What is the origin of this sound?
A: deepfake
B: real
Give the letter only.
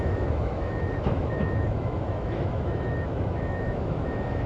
A